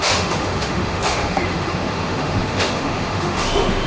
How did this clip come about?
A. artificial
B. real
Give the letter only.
A